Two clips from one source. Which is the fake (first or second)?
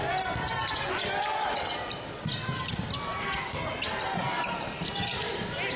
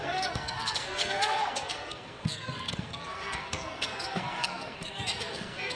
second